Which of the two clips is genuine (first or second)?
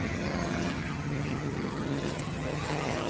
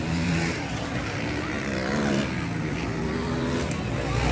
second